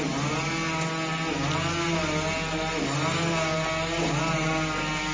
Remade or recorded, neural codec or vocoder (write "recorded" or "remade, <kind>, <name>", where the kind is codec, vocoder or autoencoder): recorded